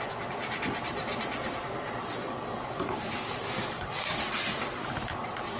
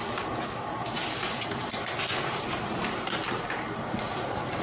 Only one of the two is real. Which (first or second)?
second